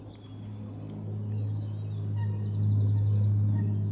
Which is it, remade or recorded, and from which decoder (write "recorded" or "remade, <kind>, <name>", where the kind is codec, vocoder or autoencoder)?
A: recorded